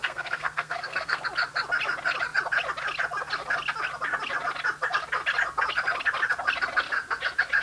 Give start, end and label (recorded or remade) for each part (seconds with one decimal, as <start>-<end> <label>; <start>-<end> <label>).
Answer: 0.0-1.2 remade; 1.2-7.6 recorded